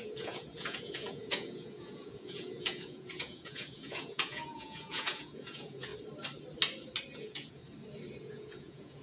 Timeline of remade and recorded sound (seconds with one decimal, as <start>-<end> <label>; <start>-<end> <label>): 0.0-5.9 remade; 5.9-7.0 recorded; 7.0-7.6 remade; 7.6-8.2 recorded; 8.2-9.0 remade